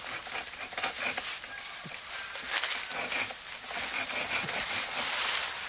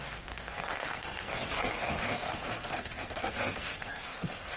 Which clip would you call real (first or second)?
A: first